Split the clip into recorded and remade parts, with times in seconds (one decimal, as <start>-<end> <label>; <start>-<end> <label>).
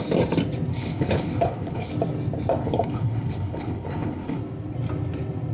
0.0-0.7 recorded; 0.7-1.9 remade; 1.9-2.6 recorded; 2.6-4.4 remade; 4.4-5.5 recorded